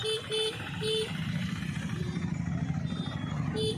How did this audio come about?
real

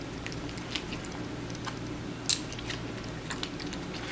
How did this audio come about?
real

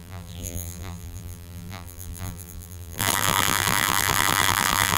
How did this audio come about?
fake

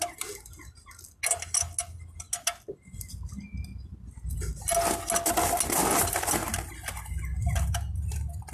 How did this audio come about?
real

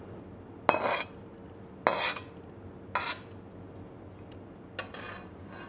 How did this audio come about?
real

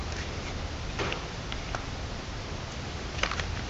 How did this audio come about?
real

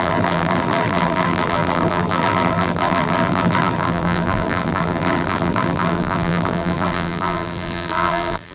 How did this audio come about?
fake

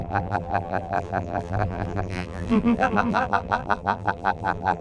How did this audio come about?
fake